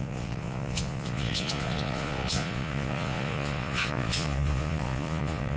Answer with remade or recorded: remade